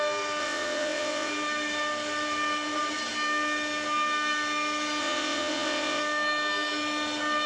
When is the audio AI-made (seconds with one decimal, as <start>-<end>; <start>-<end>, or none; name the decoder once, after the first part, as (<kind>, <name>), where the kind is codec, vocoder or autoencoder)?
0.4-1.3 (vocoder, WaveNeXt); 5.0-6.0